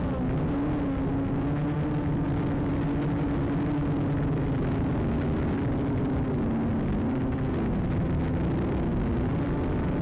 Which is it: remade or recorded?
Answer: recorded